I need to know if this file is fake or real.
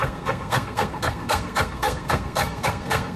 fake